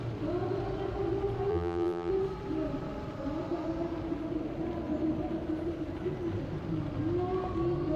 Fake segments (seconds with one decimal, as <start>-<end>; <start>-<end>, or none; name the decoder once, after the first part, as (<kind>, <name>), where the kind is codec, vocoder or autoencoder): 1.5-2.1 (vocoder, BigVGAN v2)